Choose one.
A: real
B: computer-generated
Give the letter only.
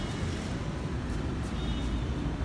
B